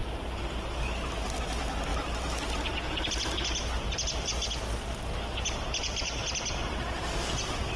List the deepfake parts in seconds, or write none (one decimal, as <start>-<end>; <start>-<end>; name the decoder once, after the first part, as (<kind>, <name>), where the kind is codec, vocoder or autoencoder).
none